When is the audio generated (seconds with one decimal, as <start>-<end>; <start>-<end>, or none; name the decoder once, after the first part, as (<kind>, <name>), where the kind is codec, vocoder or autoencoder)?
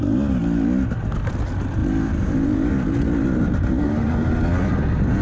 1.8-2.7 (vocoder, BigVGAN v2)